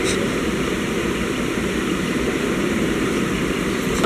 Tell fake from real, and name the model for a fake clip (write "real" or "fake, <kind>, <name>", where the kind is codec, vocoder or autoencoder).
real